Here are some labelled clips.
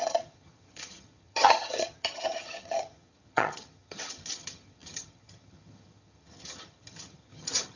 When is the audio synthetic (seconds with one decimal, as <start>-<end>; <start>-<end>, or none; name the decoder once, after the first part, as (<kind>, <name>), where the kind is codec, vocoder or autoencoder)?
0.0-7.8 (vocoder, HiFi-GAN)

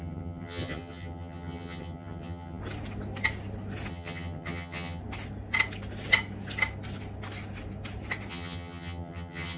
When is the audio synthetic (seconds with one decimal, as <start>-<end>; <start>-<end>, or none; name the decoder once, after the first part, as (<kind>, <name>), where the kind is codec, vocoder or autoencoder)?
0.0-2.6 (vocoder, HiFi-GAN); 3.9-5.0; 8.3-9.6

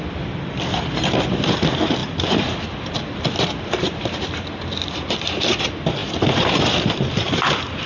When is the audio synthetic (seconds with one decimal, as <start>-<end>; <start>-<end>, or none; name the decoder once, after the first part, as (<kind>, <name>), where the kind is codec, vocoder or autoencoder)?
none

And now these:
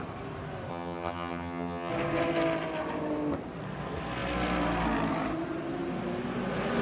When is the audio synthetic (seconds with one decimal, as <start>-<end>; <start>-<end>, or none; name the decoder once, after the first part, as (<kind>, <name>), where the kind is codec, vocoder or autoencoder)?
0.7-1.9 (vocoder, HiFi-GAN)

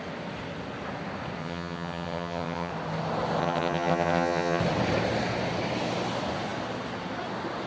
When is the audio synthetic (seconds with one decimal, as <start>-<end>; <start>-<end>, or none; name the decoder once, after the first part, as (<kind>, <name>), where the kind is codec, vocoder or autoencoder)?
1.4-2.7 (vocoder, HiFi-GAN); 3.4-4.6

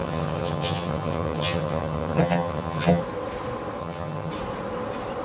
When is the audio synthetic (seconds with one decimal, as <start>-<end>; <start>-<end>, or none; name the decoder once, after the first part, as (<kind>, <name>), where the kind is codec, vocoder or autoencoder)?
0.0-3.0 (vocoder, HiFi-GAN); 3.8-4.3

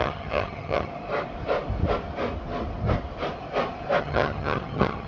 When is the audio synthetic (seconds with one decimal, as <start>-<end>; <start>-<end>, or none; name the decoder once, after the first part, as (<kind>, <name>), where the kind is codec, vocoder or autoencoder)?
0.0-0.9 (vocoder, HiFi-GAN); 4.0-5.1

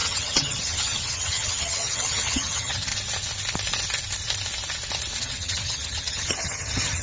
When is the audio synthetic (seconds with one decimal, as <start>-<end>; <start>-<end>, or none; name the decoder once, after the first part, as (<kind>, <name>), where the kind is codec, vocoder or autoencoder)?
0.0-2.9 (vocoder, HiFi-GAN); 5.2-7.0